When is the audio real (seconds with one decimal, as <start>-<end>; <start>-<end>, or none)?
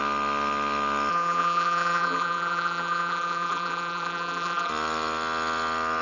0.0-1.1; 4.7-6.0